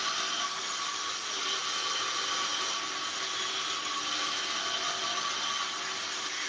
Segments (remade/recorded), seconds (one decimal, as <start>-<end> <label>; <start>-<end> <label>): 0.0-6.5 recorded